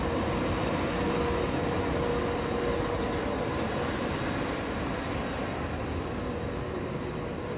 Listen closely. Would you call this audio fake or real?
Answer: real